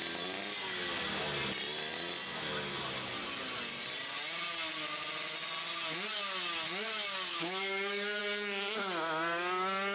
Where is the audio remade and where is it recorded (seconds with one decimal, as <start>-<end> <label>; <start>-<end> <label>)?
0.0-7.3 recorded; 7.3-8.2 remade; 8.2-9.9 recorded